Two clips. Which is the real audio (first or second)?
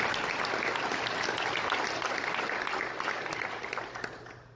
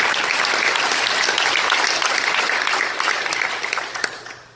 first